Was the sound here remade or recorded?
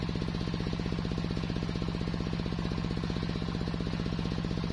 recorded